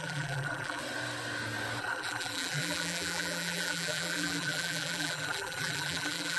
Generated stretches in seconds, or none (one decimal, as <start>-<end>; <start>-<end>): 0.0-0.8; 1.8-6.4